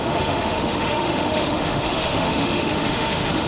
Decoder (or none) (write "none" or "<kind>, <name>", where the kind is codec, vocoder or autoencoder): autoencoder, DAC-VAE